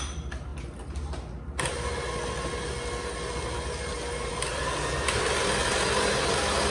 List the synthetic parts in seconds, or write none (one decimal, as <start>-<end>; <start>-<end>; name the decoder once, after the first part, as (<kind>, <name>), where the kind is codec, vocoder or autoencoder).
none